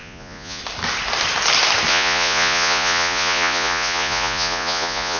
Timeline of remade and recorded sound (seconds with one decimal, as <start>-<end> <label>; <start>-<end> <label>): 0.0-0.6 remade; 0.6-1.9 recorded; 1.9-5.2 remade